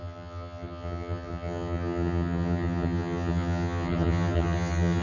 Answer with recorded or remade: remade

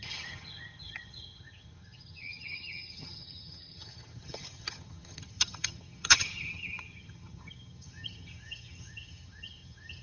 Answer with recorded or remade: remade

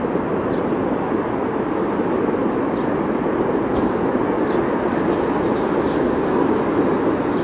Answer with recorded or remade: recorded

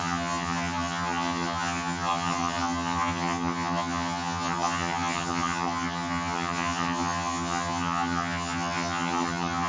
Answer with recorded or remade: remade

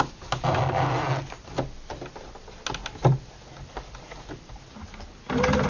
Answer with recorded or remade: recorded